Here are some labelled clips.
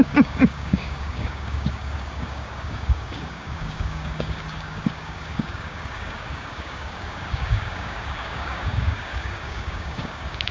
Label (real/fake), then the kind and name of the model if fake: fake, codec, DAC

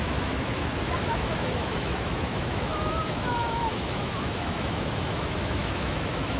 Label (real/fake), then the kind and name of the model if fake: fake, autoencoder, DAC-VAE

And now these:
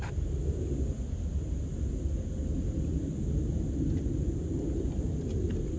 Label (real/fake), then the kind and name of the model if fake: real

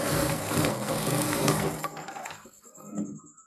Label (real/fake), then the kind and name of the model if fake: fake, codec, SNAC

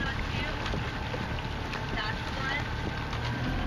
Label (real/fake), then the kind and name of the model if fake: real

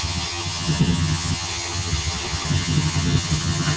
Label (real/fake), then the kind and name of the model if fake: fake, vocoder, HiFi-GAN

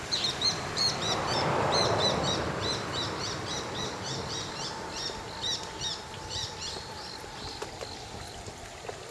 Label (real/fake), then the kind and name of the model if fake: fake, vocoder, BigVGAN v2